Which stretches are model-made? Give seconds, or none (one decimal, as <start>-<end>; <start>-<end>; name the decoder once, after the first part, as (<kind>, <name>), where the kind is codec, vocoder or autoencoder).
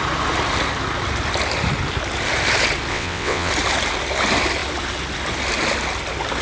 2.9-3.5 (vocoder, WaveNeXt)